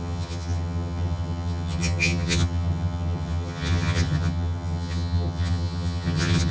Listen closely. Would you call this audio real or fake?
fake